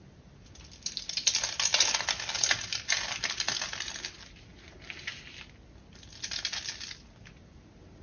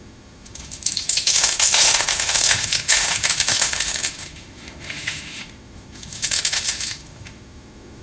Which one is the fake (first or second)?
second